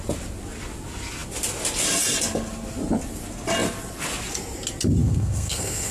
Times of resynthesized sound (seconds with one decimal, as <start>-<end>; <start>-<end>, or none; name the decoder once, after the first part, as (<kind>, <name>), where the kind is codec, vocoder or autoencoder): 5.0-5.9 (codec, SNAC)